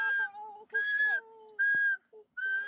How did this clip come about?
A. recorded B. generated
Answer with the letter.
A